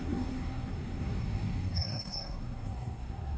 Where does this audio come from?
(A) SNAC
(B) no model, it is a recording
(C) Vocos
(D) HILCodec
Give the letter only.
A